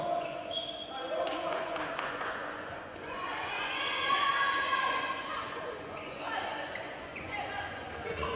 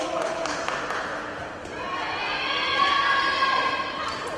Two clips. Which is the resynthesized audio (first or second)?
first